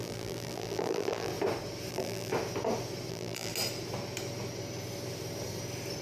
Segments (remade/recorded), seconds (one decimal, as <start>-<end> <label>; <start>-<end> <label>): 0.0-1.3 remade; 1.3-1.9 recorded; 1.9-2.3 remade; 2.3-3.1 recorded; 3.1-3.5 remade; 3.5-6.0 recorded